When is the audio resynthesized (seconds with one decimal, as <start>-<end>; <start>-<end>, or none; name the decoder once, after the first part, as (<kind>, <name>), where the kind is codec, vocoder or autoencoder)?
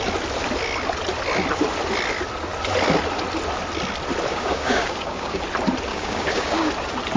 4.3-5.4 (codec, DAC); 5.9-6.7